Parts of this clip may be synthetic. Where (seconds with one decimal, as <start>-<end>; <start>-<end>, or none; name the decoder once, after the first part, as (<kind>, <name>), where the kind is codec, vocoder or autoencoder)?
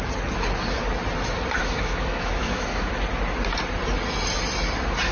1.6-2.9 (autoencoder, DAC-VAE)